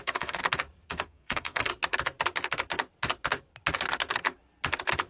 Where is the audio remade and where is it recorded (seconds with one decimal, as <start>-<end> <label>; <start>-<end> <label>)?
0.0-0.4 remade; 0.4-0.9 recorded; 0.9-1.7 remade; 1.7-5.1 recorded